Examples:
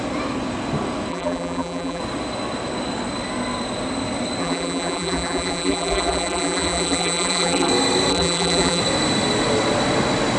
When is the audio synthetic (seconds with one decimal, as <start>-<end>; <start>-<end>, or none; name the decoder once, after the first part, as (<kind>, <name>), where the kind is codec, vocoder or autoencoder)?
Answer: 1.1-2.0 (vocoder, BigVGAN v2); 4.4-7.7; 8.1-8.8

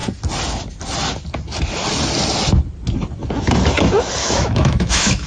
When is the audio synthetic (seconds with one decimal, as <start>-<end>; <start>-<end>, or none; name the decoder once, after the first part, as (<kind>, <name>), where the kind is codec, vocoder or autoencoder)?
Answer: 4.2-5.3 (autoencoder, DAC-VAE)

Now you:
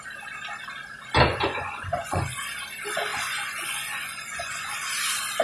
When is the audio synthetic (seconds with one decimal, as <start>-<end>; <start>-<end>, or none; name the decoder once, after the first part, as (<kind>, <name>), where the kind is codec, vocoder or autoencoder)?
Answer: 1.3-2.4 (vocoder, Vocos); 3.1-4.9

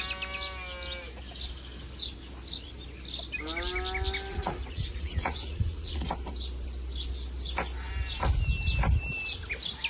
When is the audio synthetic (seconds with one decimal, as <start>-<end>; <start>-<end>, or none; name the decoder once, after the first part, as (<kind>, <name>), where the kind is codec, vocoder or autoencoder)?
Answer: 4.3-6.1 (vocoder, Vocos)

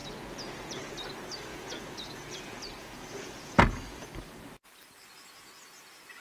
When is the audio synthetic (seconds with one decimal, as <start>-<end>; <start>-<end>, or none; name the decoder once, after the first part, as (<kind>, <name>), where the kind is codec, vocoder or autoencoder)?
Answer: 0.0-0.9 (vocoder, Vocos); 1.5-4.1

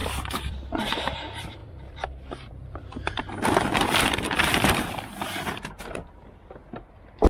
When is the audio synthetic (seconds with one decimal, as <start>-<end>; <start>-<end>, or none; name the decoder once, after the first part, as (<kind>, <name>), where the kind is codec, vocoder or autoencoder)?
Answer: 0.0-7.3 (vocoder, BigVGAN v2)